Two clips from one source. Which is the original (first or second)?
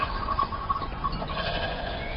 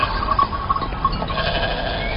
second